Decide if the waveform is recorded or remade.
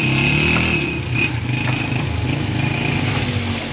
recorded